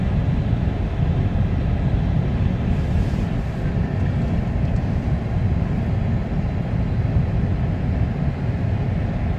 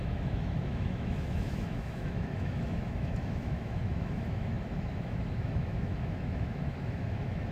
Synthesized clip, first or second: second